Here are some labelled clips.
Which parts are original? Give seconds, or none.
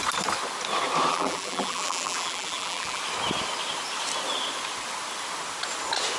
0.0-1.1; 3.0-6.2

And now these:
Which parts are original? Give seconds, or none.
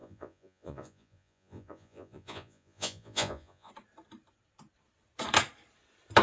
3.7-6.2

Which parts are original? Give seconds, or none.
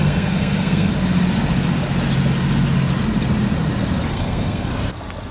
0.9-4.1; 4.7-5.3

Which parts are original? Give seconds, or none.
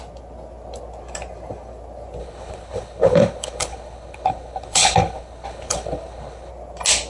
0.0-2.2; 6.5-7.1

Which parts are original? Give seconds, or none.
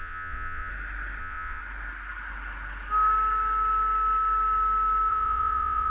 0.7-1.2; 1.6-5.1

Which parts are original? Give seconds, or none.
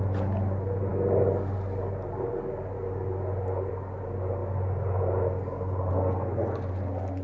0.0-7.2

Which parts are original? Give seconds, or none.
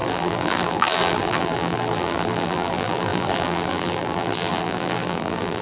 none